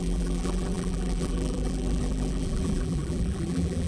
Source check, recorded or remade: remade